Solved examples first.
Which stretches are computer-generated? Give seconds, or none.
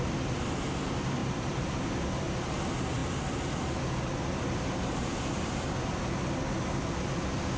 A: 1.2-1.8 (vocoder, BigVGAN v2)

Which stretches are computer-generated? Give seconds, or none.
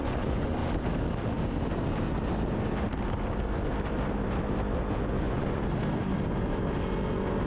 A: 0.0-0.6 (vocoder, Vocos); 5.1-5.6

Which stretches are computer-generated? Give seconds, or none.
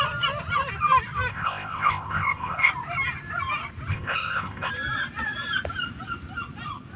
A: 1.3-2.7 (codec, ZipCodec); 3.9-4.7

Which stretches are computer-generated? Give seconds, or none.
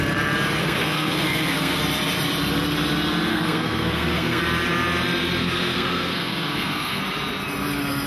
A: 0.6-1.8 (codec, SNAC); 3.3-4.4; 5.4-7.0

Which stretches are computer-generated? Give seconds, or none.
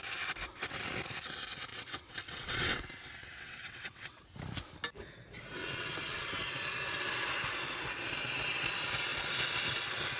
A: 1.7-4.2 (vocoder, WaveNeXt); 5.6-6.4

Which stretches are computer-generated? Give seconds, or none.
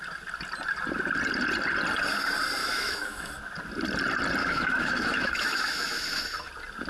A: 2.6-3.3 (autoencoder, DAC-VAE); 4.4-6.5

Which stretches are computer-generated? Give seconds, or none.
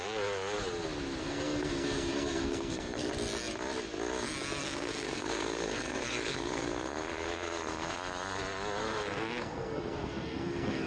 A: 1.2-3.1 (codec, SNAC); 4.6-8.4; 8.8-10.9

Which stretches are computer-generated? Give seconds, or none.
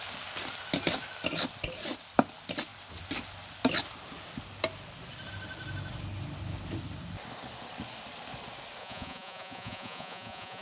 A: 8.8-10.6 (vocoder, Vocos)